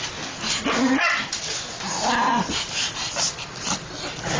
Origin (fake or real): real